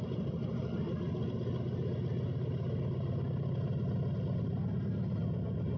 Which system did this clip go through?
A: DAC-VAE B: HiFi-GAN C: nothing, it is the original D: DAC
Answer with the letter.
C